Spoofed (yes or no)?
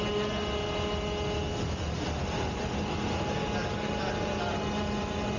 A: no